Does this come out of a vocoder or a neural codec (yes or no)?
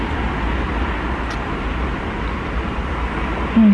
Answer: no